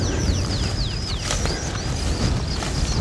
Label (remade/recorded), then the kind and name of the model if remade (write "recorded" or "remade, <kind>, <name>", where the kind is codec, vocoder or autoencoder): recorded